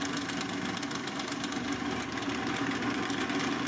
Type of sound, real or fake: real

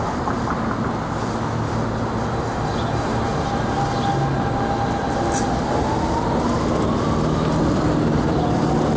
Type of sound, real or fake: real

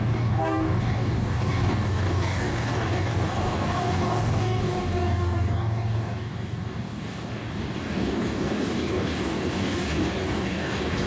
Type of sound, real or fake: fake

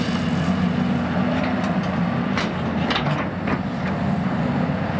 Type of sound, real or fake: real